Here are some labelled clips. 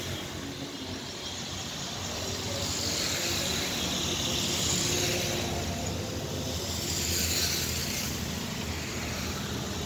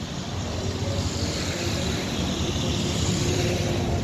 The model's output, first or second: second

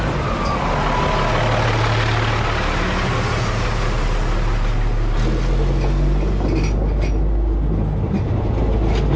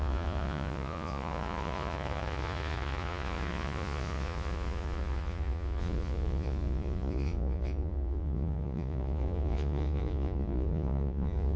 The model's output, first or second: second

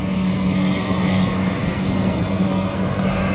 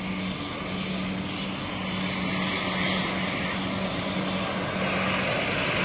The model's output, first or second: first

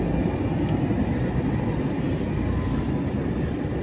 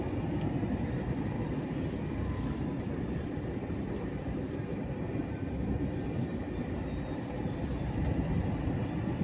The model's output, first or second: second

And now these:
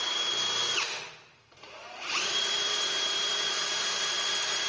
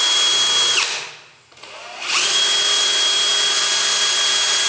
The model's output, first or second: first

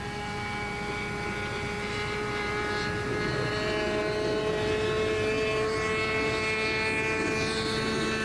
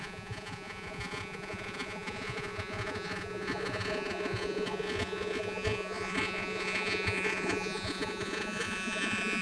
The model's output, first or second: second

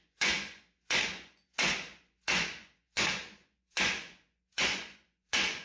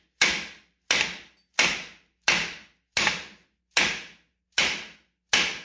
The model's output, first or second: first